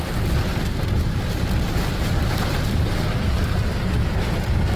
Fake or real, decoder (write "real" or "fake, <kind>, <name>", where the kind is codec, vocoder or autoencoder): fake, vocoder, BigVGAN v2